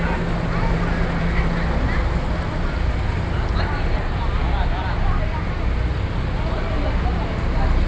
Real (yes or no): yes